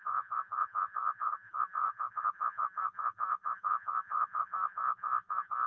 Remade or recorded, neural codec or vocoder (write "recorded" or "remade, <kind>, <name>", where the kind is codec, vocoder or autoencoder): remade, vocoder, Vocos